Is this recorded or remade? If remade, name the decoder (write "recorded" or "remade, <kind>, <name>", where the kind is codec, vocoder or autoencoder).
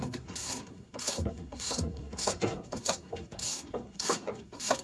remade, codec, SNAC